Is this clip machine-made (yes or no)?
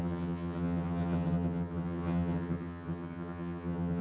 yes